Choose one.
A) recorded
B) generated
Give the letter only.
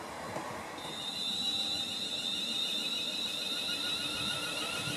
B